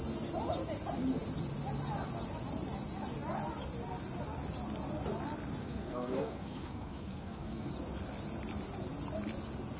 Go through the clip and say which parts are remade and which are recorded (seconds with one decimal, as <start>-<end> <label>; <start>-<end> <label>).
0.0-5.6 recorded; 5.6-7.7 remade; 7.7-9.8 recorded